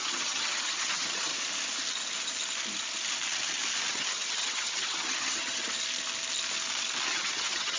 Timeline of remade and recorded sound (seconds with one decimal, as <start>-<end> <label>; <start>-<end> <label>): 0.0-1.3 remade; 1.3-3.9 recorded; 3.9-5.6 remade; 5.6-7.1 recorded; 7.1-7.8 remade